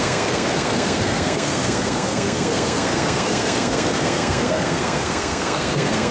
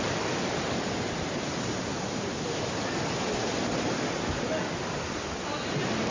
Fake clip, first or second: first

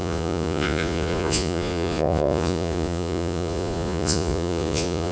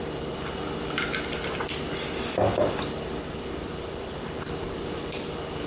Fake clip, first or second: first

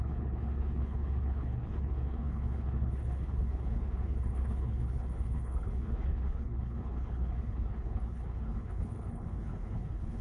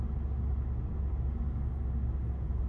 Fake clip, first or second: first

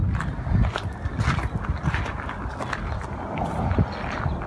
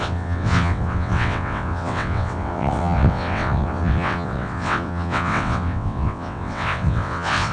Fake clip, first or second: second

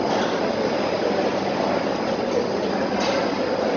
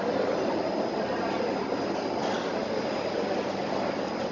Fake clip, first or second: first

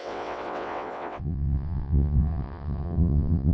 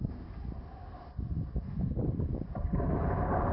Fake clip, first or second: first